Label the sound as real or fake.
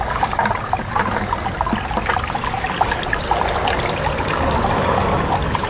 real